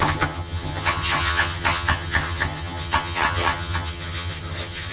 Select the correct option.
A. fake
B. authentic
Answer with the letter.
A